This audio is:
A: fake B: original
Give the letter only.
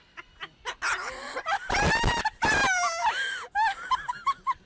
B